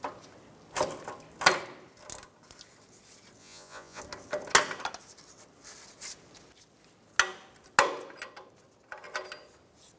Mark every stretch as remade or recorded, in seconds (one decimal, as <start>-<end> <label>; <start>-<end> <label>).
0.0-3.4 recorded; 3.4-4.0 remade; 4.0-10.0 recorded